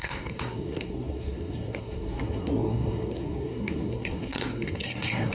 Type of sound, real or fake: fake